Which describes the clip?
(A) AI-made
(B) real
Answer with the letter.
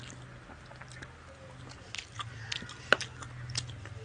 B